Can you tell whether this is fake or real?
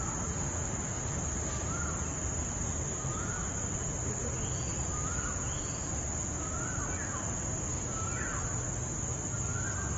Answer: real